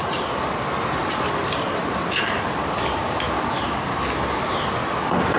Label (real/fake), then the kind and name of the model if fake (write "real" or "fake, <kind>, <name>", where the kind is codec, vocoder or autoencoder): real